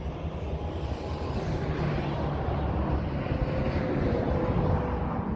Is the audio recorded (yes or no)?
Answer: yes